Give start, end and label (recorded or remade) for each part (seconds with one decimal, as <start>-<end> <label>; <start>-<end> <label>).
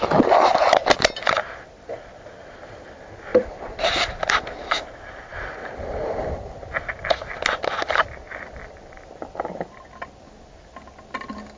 0.0-3.3 recorded; 3.3-4.1 remade; 4.1-11.6 recorded